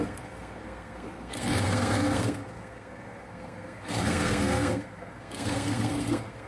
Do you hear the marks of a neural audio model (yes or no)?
yes